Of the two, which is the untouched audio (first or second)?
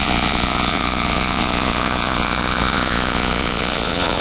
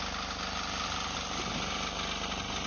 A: second